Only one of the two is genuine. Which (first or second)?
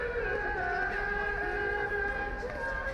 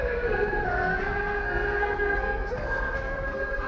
first